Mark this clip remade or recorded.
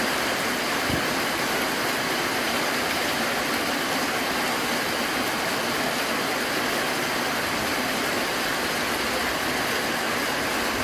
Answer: recorded